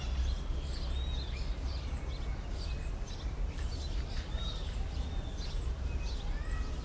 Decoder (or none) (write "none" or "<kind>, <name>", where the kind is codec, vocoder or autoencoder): none